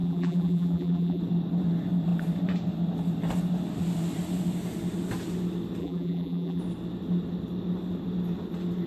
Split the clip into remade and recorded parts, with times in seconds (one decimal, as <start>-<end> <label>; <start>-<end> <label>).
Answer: 0.0-1.2 remade; 1.2-5.8 recorded; 5.8-6.6 remade; 6.6-8.9 recorded